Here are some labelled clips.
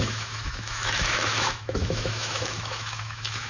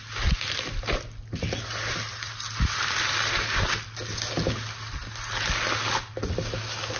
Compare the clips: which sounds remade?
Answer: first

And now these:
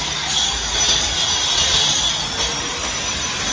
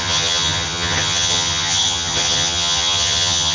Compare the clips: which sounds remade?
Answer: second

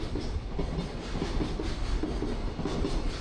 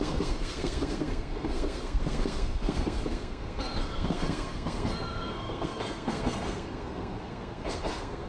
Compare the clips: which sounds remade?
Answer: second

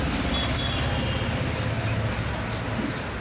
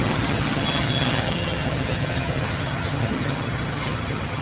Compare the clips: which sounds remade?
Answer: second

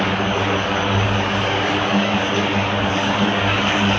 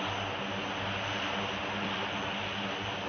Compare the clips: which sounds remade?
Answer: first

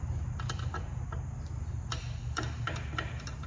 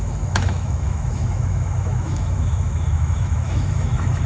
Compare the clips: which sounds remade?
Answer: second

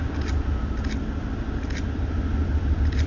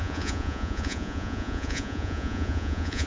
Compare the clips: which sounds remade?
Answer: second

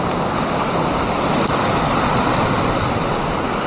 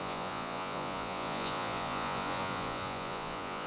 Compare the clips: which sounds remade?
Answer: second